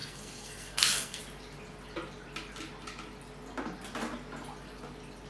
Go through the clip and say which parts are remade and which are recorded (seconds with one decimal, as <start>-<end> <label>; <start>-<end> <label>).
0.0-1.2 remade; 1.2-5.3 recorded